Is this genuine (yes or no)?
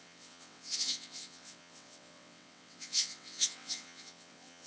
no